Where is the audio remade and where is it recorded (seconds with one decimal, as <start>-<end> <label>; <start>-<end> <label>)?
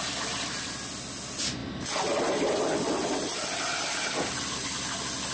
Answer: 0.0-5.3 recorded